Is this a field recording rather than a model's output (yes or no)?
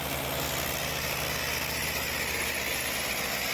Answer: yes